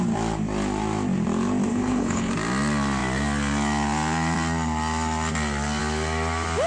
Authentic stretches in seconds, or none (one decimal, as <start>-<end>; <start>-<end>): 0.0-1.7; 2.3-6.7